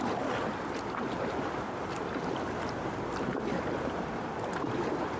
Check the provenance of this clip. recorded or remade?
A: recorded